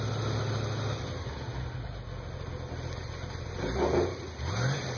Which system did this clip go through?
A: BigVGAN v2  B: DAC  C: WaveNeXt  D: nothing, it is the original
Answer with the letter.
D